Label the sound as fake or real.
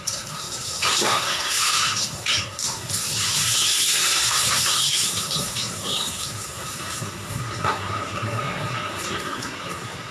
fake